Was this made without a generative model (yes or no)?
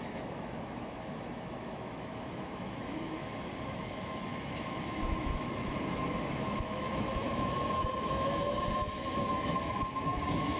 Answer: no